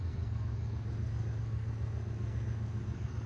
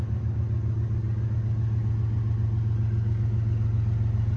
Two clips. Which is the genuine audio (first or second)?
second